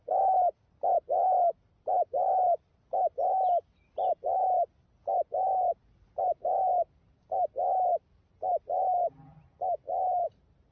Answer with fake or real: real